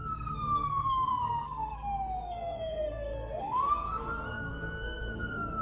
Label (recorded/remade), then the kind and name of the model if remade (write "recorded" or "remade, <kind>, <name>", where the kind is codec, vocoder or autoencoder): remade, codec, SNAC